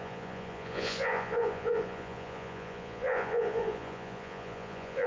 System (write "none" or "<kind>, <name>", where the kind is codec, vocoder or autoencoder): vocoder, Vocos